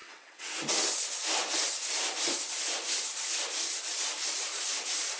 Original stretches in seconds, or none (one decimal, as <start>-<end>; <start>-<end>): 0.5-5.2